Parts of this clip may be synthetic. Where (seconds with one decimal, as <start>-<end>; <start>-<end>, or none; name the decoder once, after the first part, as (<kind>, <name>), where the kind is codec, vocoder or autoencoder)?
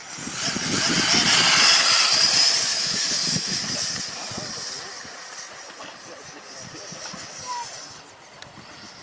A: 2.8-3.6 (autoencoder, DAC-VAE)